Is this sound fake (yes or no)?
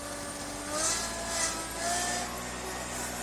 no